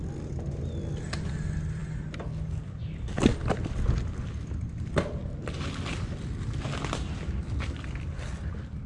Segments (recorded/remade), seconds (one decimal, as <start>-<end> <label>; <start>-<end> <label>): 0.0-8.9 recorded